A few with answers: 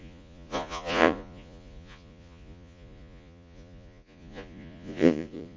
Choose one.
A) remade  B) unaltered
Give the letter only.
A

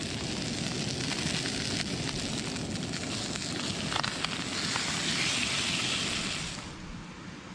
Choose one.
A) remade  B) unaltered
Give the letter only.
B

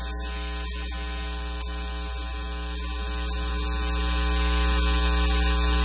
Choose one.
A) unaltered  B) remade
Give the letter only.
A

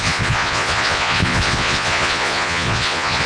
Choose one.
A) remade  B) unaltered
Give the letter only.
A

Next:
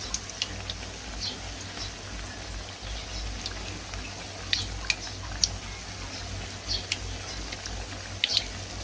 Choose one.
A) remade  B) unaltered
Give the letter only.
B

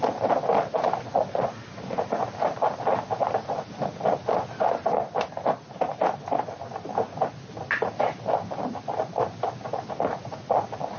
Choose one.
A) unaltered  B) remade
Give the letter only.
A